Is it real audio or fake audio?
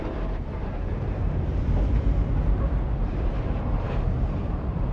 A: fake